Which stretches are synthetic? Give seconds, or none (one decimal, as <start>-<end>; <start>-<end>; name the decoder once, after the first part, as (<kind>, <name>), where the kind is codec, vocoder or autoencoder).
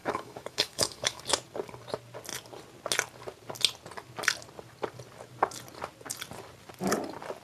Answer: 0.0-1.2 (autoencoder, DAC-VAE)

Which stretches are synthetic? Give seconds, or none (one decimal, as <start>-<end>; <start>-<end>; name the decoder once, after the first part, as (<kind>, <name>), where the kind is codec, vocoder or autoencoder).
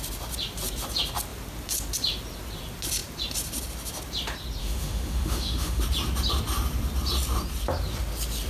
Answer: 4.6-5.8 (autoencoder, DAC-VAE)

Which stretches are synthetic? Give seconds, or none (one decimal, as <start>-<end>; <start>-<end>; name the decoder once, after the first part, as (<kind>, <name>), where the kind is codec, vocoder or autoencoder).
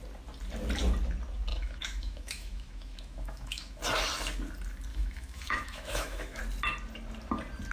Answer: 1.5-3.8 (autoencoder, DAC-VAE); 4.9-6.4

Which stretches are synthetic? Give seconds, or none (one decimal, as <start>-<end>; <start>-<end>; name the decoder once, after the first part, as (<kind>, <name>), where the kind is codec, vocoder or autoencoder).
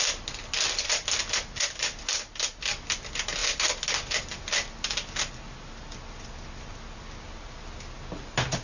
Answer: none